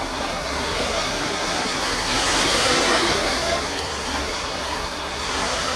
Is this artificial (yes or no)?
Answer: yes